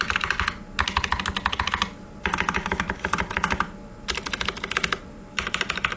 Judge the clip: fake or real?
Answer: real